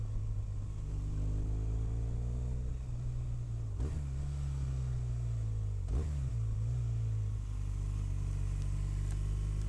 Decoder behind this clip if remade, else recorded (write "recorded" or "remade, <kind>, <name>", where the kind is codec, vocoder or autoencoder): recorded